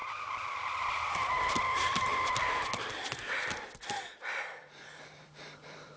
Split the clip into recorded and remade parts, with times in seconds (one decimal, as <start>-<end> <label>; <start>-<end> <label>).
0.0-2.1 recorded; 2.1-6.0 remade